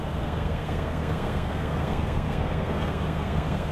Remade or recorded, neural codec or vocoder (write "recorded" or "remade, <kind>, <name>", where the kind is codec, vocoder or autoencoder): remade, codec, SNAC